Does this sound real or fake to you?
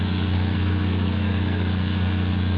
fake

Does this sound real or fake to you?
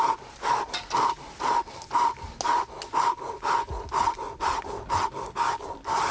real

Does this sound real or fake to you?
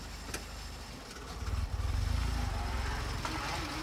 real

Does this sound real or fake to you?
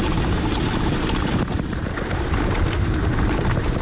fake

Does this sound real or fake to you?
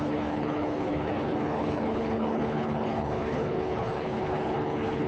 fake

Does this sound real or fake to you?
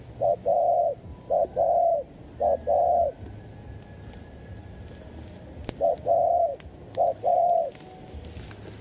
real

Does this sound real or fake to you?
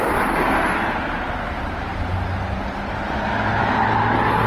real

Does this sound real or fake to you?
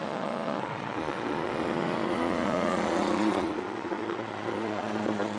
fake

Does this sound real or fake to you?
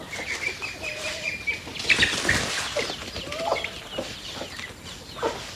real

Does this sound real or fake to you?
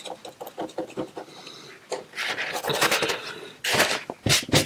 real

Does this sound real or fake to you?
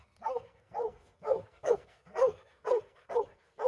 fake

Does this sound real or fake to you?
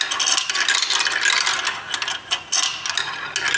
real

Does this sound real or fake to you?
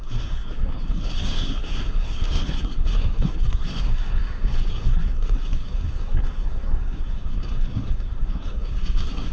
fake